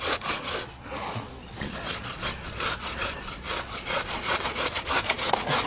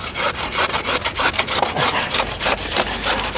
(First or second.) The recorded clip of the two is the second